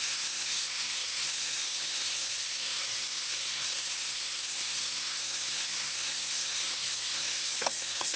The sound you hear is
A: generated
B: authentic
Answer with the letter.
A